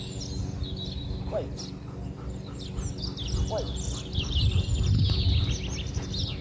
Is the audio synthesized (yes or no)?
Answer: no